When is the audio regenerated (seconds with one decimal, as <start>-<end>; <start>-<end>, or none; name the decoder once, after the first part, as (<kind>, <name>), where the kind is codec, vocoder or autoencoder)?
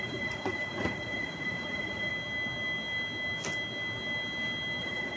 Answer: 0.0-2.1 (vocoder, Vocos); 4.8-5.2